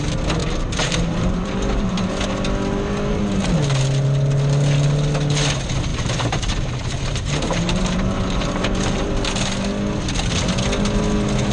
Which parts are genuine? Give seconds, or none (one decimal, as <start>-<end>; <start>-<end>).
0.0-0.4; 2.1-5.9; 9.1-11.5